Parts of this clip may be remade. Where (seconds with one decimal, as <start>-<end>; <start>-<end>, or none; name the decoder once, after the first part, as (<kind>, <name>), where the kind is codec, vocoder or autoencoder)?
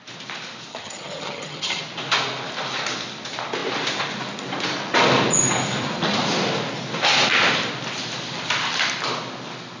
0.7-1.8 (vocoder, HiFi-GAN)